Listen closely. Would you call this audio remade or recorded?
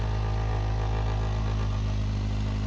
recorded